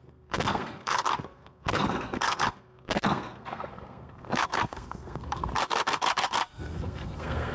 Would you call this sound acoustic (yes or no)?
no